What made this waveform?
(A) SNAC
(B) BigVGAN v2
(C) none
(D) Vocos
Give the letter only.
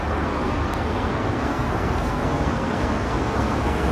A